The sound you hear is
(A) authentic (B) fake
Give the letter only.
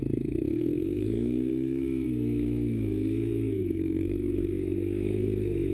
B